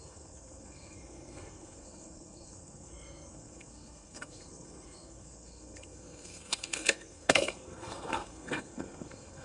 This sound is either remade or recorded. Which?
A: remade